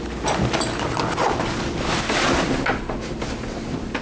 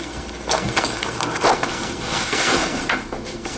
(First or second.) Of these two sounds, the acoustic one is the first